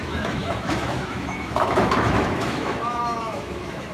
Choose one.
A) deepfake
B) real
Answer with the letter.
A